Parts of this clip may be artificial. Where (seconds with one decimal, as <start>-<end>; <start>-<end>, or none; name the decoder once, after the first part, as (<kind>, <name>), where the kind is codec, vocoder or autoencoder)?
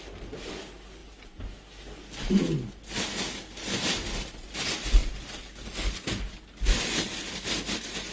none